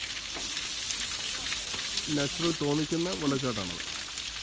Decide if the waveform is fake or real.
real